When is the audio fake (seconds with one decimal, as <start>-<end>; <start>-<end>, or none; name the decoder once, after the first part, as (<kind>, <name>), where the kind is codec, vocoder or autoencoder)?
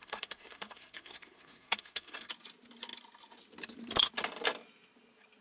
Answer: 0.0-2.3 (codec, SNAC)